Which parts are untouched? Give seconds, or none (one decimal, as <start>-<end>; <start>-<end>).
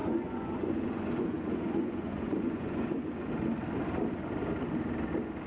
3.3-5.5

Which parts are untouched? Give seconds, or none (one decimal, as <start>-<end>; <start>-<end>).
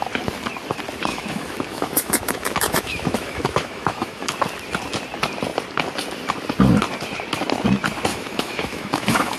0.0-1.1; 4.3-8.1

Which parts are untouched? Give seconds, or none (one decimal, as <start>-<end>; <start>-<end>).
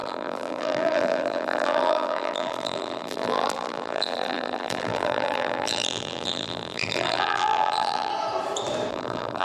8.1-8.9